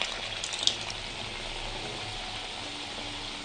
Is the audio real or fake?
real